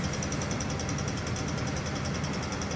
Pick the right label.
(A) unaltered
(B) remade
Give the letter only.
A